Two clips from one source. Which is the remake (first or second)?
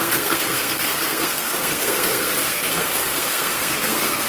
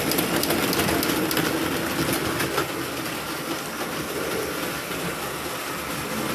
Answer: first